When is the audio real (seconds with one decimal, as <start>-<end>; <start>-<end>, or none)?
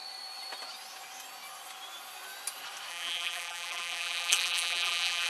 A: 0.0-2.9